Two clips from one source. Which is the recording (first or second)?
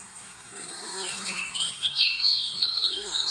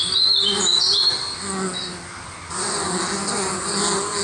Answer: second